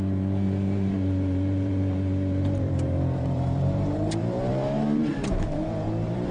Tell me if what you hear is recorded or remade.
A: remade